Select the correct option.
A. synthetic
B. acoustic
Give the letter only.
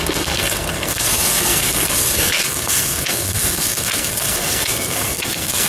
A